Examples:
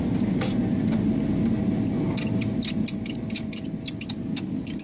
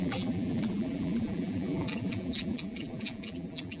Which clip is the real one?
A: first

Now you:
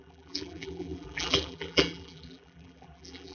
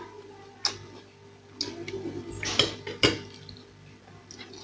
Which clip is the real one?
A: second